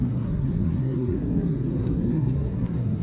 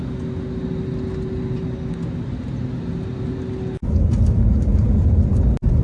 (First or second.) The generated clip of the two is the first